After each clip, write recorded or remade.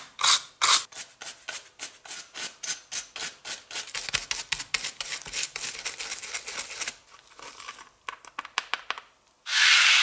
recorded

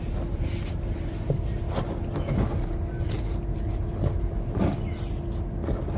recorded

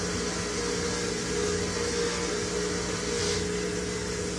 recorded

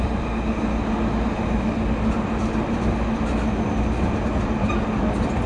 recorded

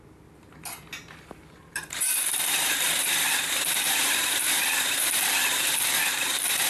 remade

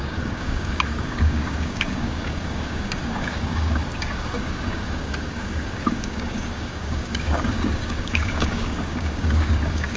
remade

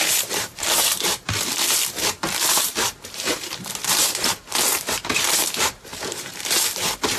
remade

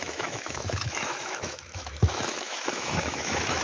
remade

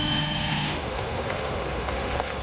remade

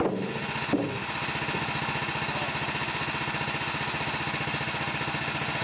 recorded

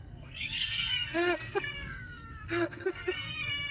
remade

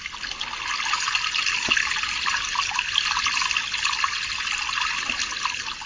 recorded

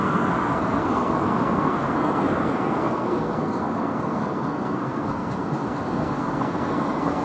remade